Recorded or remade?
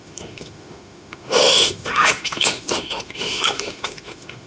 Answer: remade